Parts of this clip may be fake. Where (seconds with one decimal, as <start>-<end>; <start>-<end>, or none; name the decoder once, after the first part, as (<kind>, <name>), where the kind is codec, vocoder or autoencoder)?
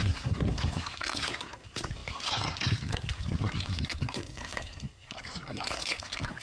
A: 0.0-6.4 (codec, SNAC)